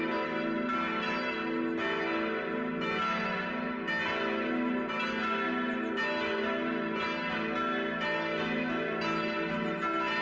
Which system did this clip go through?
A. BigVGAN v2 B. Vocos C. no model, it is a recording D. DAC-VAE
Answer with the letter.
C